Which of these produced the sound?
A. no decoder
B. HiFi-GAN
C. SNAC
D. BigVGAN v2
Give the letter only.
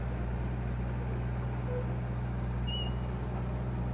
A